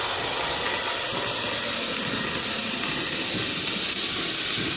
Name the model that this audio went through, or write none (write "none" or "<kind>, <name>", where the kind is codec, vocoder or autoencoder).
none